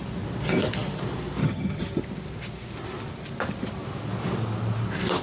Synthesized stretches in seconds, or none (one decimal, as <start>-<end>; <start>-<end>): 1.4-2.0